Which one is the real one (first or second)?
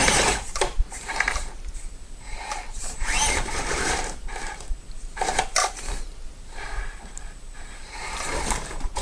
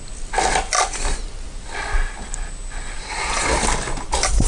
second